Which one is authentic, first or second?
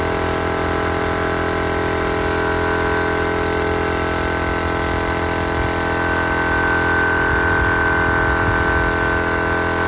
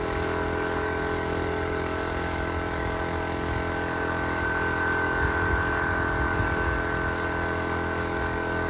first